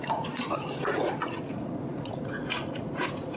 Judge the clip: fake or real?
fake